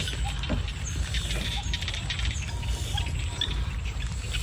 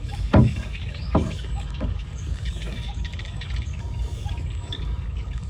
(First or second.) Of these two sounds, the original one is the first